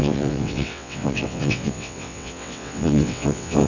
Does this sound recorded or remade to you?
remade